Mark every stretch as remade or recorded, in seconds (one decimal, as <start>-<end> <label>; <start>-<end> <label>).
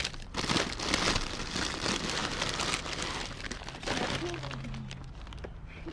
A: 0.0-5.9 recorded